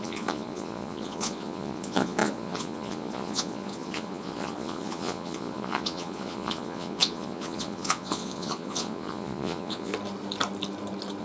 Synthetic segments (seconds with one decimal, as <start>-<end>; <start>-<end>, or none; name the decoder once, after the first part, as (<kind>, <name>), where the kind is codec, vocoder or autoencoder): 0.0-9.9 (vocoder, Vocos)